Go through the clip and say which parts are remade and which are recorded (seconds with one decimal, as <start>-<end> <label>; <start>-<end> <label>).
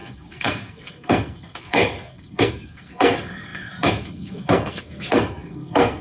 0.0-6.0 remade